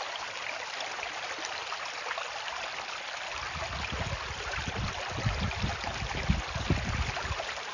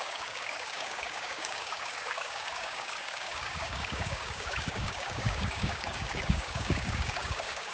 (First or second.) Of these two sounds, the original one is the first